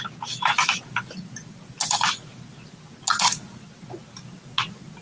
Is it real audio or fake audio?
real